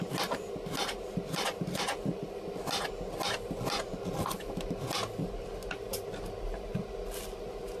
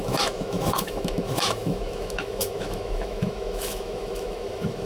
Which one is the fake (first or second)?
second